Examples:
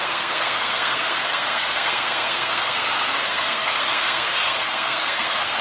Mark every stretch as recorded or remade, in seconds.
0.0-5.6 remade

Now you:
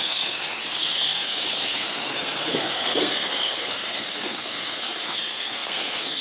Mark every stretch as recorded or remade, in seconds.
0.0-6.2 remade

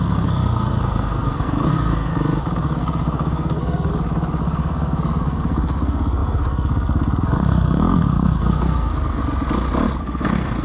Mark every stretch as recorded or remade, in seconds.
0.0-2.1 remade; 2.1-2.6 recorded; 2.6-3.9 remade; 3.9-4.4 recorded; 4.4-9.2 remade; 9.2-10.0 recorded; 10.0-10.6 remade

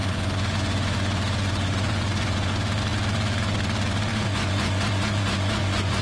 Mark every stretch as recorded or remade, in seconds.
0.0-2.5 remade; 2.5-4.1 recorded; 4.1-6.0 remade

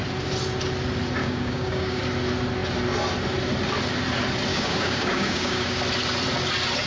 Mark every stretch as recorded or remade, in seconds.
0.0-1.2 recorded; 1.2-2.0 remade; 2.0-4.5 recorded; 4.5-5.8 remade; 5.8-6.9 recorded

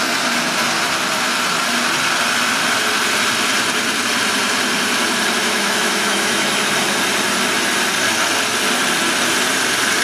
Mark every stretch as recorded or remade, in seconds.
0.0-5.4 recorded; 5.4-6.7 remade; 6.7-10.0 recorded

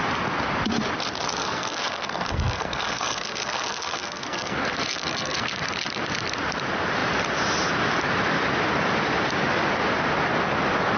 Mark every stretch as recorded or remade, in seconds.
0.0-1.4 recorded; 1.4-5.7 remade; 5.7-11.0 recorded

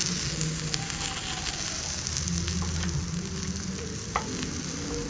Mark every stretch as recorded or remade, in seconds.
0.0-5.1 recorded